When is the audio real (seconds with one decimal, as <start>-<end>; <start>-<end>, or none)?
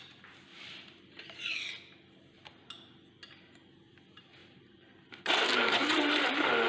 0.0-0.5; 1.5-4.4; 5.9-6.7